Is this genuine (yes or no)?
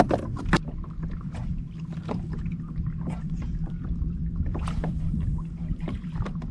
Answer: no